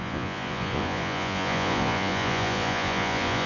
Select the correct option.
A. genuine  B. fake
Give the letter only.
B